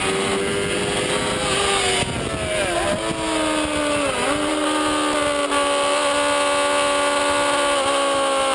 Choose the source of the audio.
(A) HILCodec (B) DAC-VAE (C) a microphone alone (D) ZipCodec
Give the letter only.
C